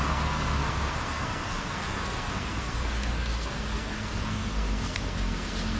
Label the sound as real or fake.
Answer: fake